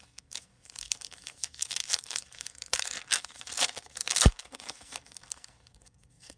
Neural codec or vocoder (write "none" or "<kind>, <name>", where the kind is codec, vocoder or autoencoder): codec, SNAC